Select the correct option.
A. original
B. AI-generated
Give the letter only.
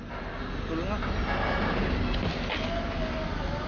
A